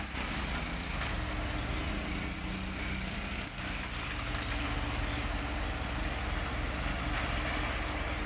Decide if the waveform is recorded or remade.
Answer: recorded